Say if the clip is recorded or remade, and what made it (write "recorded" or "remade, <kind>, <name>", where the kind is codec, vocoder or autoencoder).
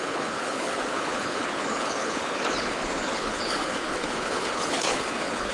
remade, codec, HILCodec